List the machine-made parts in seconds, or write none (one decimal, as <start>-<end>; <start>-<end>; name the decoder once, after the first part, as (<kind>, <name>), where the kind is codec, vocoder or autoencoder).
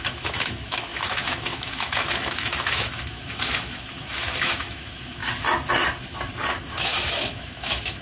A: 0.0-5.2 (autoencoder, DAC-VAE); 6.7-8.0